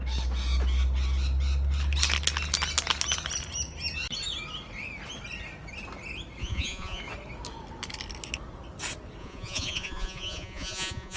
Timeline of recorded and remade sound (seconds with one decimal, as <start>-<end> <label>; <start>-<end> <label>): 0.0-6.4 recorded; 6.4-7.0 remade; 7.0-9.2 recorded; 9.2-11.2 remade

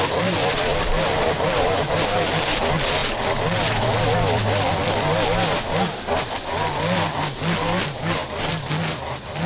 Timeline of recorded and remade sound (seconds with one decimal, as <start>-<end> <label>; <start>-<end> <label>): 0.0-0.4 recorded; 0.4-2.6 remade; 2.6-9.5 recorded

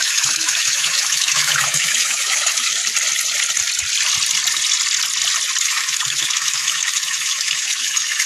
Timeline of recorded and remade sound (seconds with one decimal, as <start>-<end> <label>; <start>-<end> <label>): 0.0-2.8 remade; 2.8-5.6 recorded; 5.6-8.3 remade